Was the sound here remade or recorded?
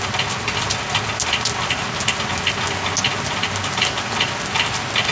recorded